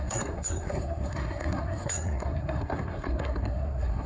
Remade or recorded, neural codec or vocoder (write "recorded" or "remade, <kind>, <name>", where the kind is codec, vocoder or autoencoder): remade, codec, SNAC